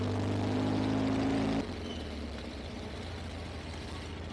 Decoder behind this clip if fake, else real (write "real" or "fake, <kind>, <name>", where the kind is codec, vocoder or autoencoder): real